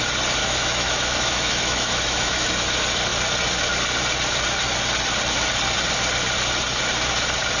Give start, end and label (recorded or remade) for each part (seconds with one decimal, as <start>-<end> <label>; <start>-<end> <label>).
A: 0.0-0.4 recorded; 0.4-2.5 remade; 2.5-7.6 recorded